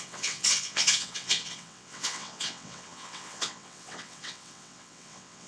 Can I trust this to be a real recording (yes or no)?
no